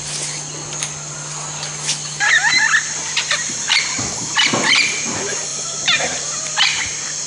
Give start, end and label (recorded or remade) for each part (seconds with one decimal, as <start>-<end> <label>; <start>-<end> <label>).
0.0-3.4 recorded; 3.4-4.1 remade; 4.1-5.5 recorded; 5.5-6.8 remade; 6.8-7.3 recorded